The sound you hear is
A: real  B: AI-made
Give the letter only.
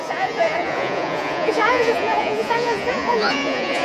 B